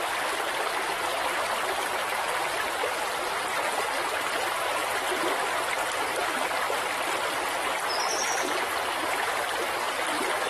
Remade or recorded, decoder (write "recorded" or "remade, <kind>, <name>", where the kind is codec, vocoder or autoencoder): recorded